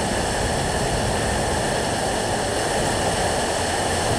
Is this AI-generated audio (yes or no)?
no